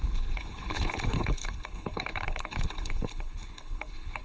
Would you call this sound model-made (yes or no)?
yes